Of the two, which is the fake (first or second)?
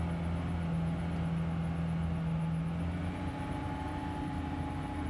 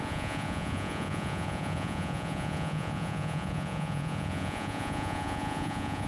second